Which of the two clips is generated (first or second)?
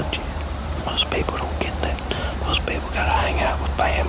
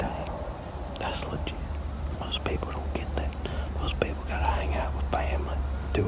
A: first